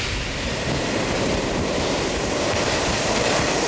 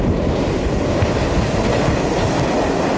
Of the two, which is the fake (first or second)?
first